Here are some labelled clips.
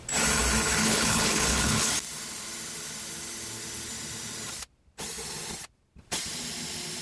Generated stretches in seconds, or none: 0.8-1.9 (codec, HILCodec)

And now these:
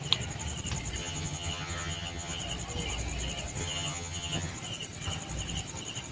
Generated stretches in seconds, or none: 1.0-2.4 (vocoder, HiFi-GAN); 3.6-4.5

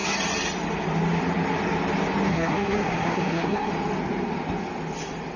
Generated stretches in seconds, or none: 2.3-3.7 (codec, SNAC)

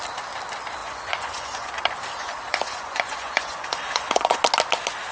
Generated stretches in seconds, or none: 0.8-1.7 (vocoder, Vocos); 2.2-4.4